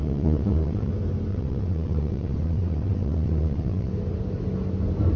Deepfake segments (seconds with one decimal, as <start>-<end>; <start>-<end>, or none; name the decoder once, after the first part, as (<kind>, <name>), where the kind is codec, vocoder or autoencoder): 0.0-0.9 (vocoder, WaveNeXt); 1.3-3.9